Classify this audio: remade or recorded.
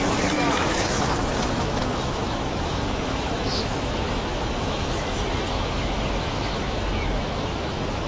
remade